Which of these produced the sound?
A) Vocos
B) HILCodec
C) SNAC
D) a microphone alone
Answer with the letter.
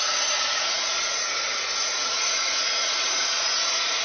A